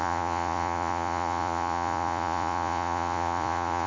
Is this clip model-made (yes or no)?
yes